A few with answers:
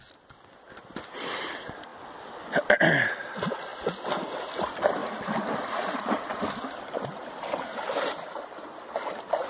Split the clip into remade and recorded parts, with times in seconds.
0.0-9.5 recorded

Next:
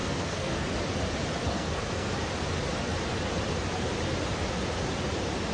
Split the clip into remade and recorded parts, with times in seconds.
0.0-0.7 remade; 0.7-1.4 recorded; 1.4-2.1 remade; 2.1-5.5 recorded